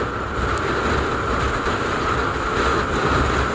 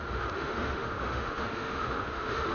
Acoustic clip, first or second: first